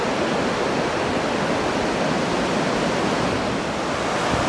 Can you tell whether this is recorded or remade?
recorded